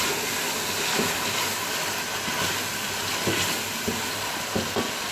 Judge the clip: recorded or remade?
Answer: recorded